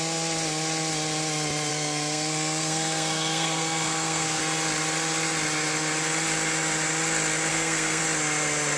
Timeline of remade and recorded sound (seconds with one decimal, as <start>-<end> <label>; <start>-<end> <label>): 0.0-1.7 recorded; 1.7-4.4 remade; 4.4-7.5 recorded; 7.5-8.0 remade; 8.0-8.8 recorded